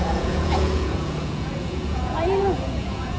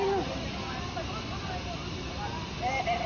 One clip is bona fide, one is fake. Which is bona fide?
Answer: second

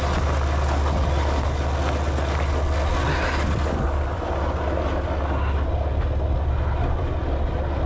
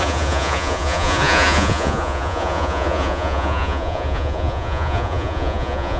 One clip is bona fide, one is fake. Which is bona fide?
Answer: first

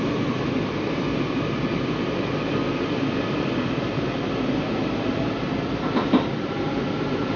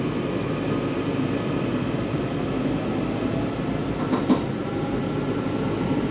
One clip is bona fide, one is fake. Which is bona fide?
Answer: second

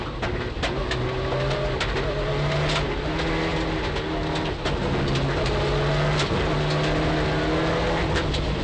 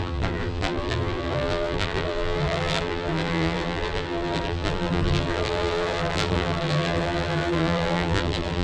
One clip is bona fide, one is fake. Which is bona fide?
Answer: first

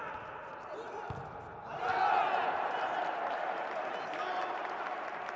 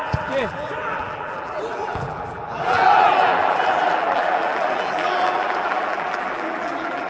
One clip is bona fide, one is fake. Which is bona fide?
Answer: first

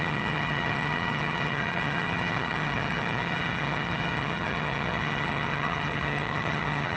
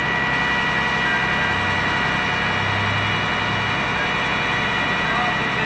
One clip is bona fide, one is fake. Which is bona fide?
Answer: second